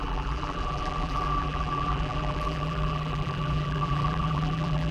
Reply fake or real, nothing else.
fake